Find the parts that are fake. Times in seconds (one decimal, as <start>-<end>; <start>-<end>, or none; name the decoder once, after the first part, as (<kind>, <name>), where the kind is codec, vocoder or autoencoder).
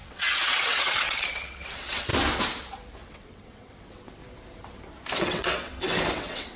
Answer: 0.0-2.1 (vocoder, WaveNeXt); 3.1-4.2; 5.2-6.6